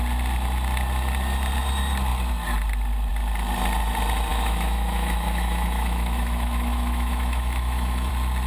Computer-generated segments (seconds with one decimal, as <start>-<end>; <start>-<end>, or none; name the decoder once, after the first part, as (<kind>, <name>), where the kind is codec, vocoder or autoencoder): 4.3-8.1 (autoencoder, DAC-VAE)